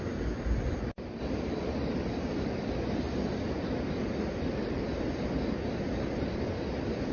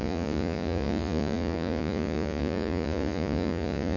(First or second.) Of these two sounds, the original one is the first